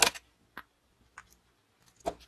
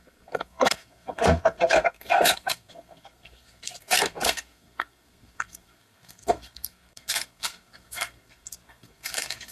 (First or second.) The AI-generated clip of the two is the second